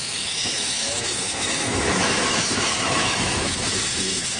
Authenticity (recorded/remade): remade